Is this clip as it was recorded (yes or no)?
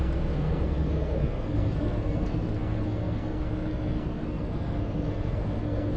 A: no